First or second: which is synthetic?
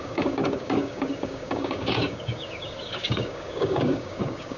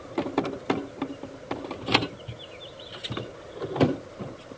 first